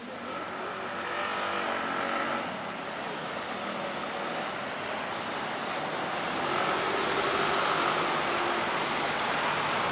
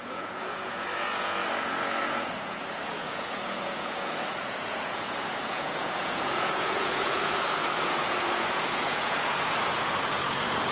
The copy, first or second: second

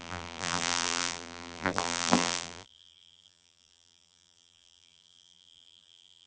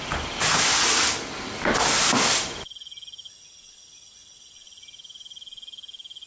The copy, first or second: first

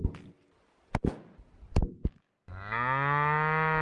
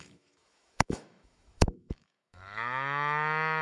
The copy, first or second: second